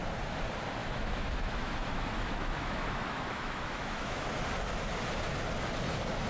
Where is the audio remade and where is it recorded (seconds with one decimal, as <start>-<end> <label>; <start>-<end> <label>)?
0.0-0.8 recorded; 0.8-4.3 remade; 4.3-6.3 recorded